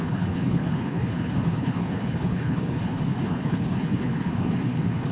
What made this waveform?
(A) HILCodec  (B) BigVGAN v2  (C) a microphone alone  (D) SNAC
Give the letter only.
A